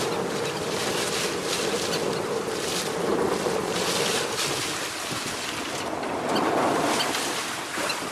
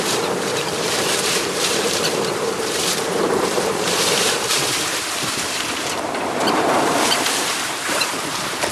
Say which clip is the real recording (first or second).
first